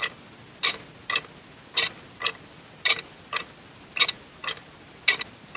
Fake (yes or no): no